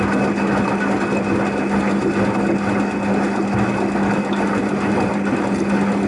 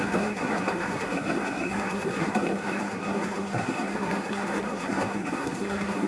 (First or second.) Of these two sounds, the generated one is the second